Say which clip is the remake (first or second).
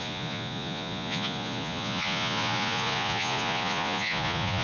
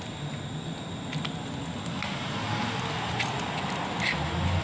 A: first